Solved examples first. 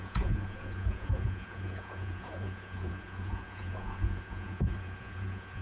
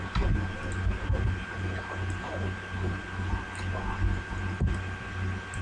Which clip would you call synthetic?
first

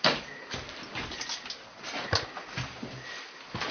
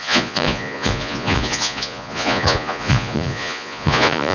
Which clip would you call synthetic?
second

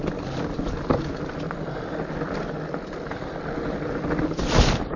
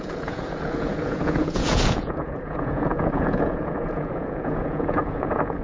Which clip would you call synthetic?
second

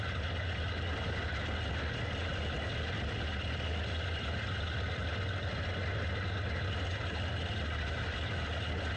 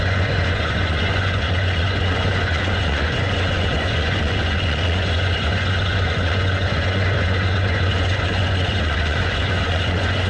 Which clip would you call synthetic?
second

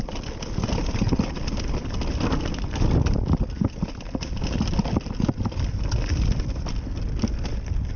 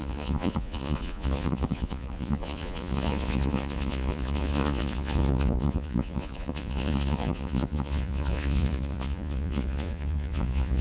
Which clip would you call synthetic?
second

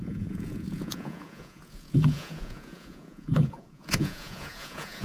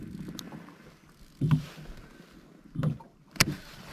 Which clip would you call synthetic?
first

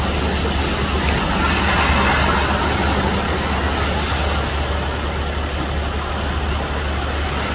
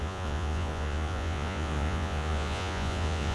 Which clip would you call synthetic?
second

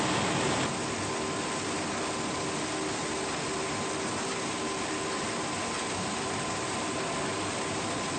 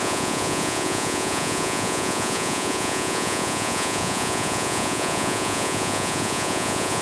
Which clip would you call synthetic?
second